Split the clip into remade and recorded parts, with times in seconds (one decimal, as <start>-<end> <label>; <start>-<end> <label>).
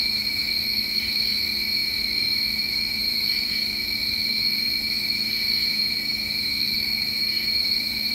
0.0-8.1 remade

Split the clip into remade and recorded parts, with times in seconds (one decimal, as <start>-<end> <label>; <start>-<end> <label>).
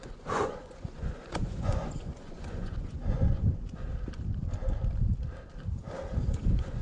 0.0-3.9 remade; 3.9-6.2 recorded; 6.2-6.8 remade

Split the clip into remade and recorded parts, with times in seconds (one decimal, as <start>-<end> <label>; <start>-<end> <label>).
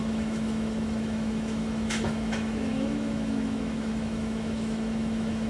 0.0-5.5 remade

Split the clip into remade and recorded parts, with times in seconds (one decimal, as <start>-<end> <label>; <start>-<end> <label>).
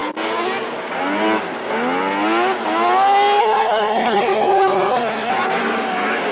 0.0-3.4 recorded; 3.4-5.3 remade; 5.3-6.3 recorded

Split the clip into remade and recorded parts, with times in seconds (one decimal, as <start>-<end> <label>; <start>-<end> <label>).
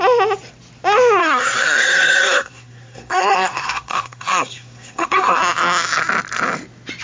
0.0-1.2 recorded; 1.2-5.4 remade; 5.4-7.0 recorded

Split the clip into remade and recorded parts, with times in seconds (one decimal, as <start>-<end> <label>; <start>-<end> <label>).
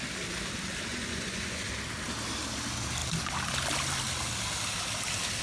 0.0-0.9 recorded; 0.9-1.7 remade; 1.7-5.4 recorded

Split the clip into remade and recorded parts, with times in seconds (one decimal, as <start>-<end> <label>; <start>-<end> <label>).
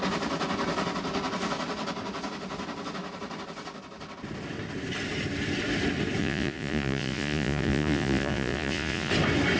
0.0-6.2 recorded; 6.2-9.1 remade; 9.1-9.6 recorded